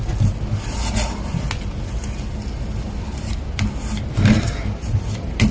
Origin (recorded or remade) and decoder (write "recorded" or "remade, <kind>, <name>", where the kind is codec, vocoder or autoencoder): recorded